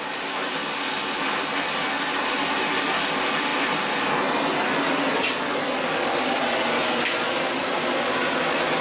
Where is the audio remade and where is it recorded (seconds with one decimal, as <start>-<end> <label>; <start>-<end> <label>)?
0.0-8.8 recorded